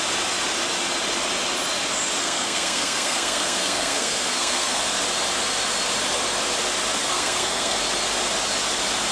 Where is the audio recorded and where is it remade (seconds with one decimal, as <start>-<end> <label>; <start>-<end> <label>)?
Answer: 0.0-2.2 recorded; 2.2-4.8 remade; 4.8-7.0 recorded; 7.0-7.8 remade; 7.8-9.1 recorded